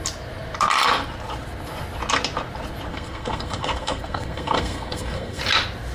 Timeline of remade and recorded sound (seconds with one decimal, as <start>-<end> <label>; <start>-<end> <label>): 0.0-2.9 recorded; 2.9-5.4 remade; 5.4-5.9 recorded